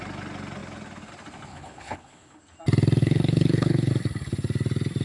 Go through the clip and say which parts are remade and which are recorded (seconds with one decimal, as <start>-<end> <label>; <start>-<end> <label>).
0.0-1.5 recorded; 1.5-2.4 remade; 2.4-3.0 recorded; 3.0-3.9 remade; 3.9-5.0 recorded